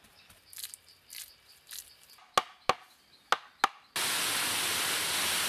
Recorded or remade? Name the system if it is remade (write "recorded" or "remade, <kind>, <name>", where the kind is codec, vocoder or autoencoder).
recorded